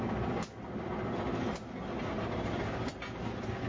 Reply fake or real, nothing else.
real